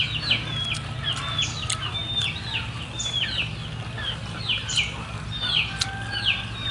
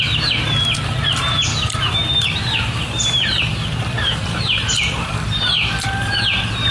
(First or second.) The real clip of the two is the first